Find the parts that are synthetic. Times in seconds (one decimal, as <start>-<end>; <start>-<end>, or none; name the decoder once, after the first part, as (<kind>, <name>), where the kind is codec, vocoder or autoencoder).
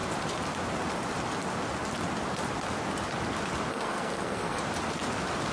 3.7-4.6 (codec, SNAC)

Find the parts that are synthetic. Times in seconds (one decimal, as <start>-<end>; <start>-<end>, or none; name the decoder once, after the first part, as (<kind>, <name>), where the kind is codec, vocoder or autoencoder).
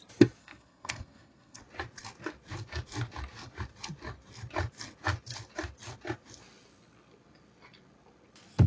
0.4-1.6 (codec, SNAC)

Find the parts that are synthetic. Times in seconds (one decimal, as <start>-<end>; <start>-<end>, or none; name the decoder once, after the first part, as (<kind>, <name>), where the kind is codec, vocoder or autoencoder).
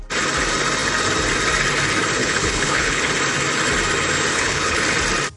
2.2-3.1 (codec, HILCodec); 4.3-4.8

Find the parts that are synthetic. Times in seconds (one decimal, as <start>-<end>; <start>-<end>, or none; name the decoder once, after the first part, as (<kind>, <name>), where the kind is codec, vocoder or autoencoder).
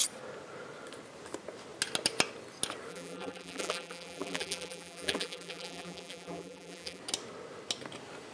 2.9-7.0 (vocoder, BigVGAN v2)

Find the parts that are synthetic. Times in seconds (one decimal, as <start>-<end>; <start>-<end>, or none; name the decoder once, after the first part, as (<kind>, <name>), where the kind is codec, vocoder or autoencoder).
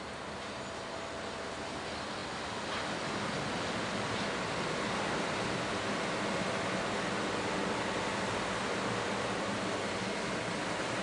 none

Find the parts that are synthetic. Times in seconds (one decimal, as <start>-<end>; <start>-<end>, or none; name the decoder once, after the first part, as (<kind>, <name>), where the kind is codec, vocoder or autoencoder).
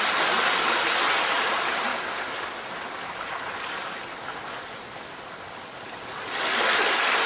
none